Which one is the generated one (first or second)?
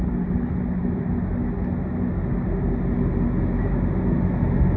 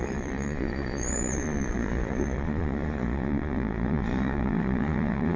second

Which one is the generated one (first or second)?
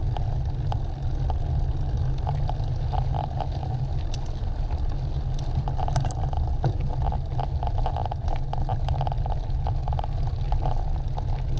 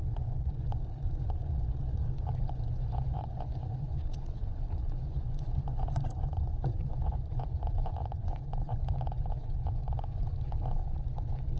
second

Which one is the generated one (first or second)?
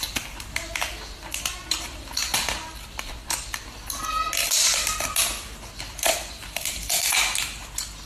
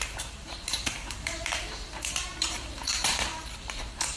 second